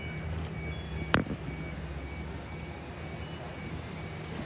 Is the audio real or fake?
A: real